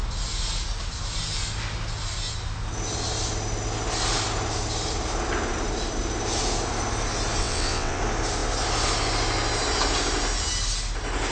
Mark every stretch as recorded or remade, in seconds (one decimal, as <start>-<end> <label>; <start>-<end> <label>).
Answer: 0.0-7.4 recorded; 7.4-8.0 remade; 8.0-11.3 recorded